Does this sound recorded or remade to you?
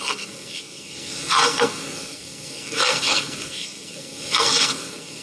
remade